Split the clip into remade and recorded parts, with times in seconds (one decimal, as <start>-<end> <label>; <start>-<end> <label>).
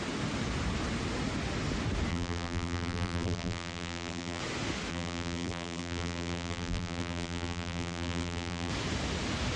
0.0-2.1 recorded; 2.1-4.4 remade; 4.4-4.9 recorded; 4.9-8.7 remade; 8.7-9.6 recorded